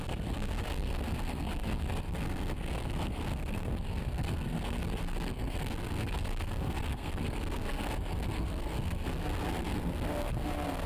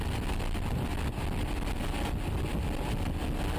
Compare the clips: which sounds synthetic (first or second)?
first